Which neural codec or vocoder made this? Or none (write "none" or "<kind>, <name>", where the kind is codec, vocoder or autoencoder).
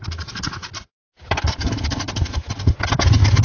none